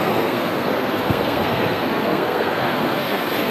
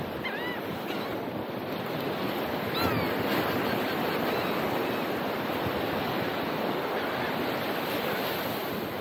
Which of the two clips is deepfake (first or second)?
first